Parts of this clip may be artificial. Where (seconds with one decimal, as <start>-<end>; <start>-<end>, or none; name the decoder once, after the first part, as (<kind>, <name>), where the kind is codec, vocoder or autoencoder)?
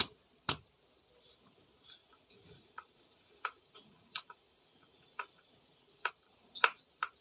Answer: 2.0-6.1 (vocoder, Vocos)